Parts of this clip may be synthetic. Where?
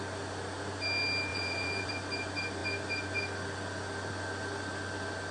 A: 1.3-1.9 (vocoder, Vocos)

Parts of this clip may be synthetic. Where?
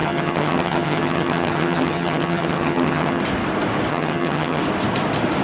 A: 0.0-3.2 (vocoder, HiFi-GAN); 3.9-4.6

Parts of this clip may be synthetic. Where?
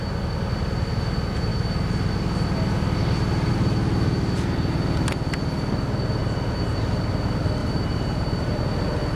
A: 7.6-8.6 (vocoder, BigVGAN v2)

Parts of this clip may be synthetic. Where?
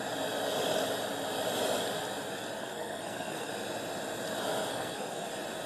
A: 2.6-3.5 (codec, SNAC); 4.7-5.3